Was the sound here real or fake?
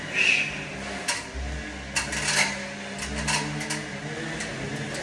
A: real